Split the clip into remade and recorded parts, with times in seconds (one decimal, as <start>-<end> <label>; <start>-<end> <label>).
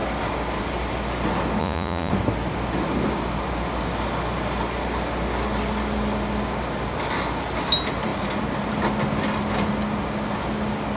0.0-1.6 recorded; 1.6-2.1 remade; 2.1-11.0 recorded